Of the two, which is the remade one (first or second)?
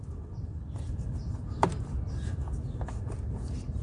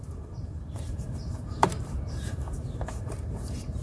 second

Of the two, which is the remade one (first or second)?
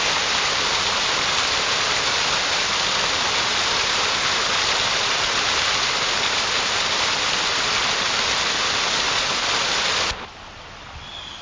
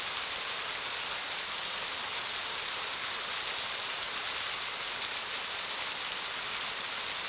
first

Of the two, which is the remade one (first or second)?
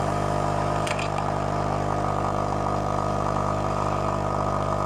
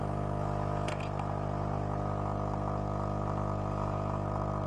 first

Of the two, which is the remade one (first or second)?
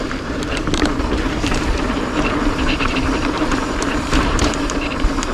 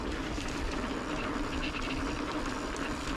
first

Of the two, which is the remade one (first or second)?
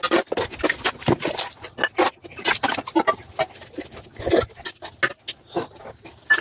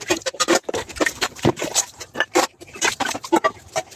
second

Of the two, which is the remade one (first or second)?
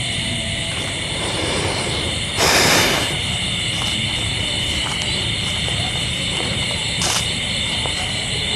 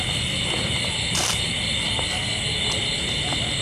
first